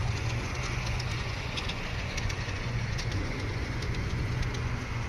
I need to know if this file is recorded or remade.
remade